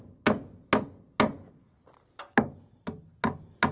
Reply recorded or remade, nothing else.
recorded